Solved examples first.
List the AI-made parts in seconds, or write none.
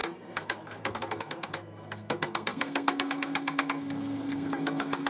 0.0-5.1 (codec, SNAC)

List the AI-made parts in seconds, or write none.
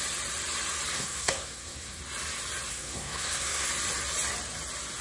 0.9-2.0 (codec, SNAC); 2.7-3.7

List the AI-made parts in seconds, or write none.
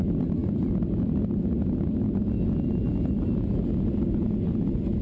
none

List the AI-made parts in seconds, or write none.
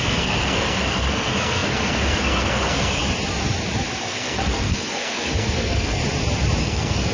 0.0-3.0 (codec, SNAC); 4.0-6.0; 6.6-7.1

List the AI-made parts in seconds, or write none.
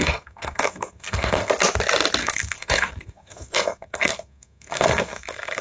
0.0-1.5 (codec, SNAC); 2.2-5.6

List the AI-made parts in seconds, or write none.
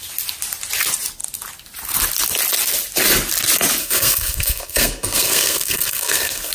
3.8-6.5 (codec, SNAC)